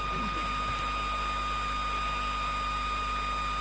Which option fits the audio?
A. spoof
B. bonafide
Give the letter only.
B